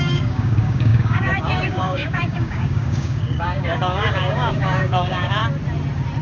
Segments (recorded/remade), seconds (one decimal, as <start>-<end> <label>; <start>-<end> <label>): 0.0-5.4 remade; 5.4-6.2 recorded